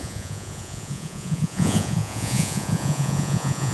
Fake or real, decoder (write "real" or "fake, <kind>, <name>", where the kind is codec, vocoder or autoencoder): fake, vocoder, Vocos